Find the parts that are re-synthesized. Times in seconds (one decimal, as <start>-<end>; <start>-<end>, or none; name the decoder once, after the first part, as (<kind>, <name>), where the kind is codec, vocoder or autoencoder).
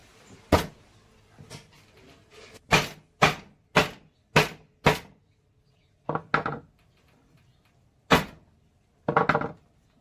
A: none